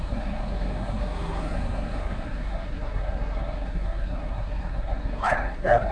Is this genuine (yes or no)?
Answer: no